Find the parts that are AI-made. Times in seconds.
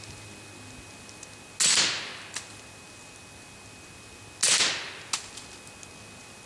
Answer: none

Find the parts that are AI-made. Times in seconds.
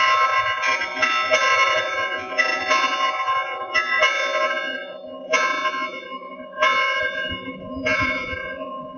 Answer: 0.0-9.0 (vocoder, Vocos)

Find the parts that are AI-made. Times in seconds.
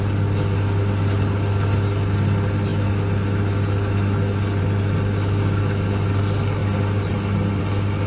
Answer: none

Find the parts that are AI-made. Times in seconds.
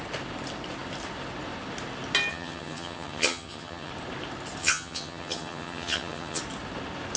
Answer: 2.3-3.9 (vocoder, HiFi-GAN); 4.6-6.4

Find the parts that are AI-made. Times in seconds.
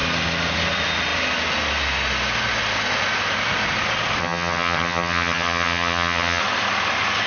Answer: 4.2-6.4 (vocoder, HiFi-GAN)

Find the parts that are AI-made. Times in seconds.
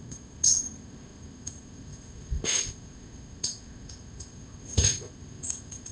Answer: 0.0-5.9 (codec, ZipCodec)